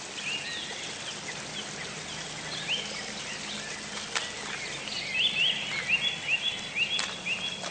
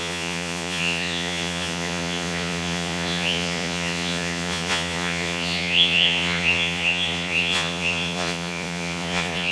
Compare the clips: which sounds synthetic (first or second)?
second